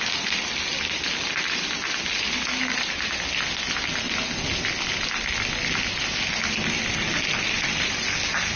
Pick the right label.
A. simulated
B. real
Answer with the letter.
B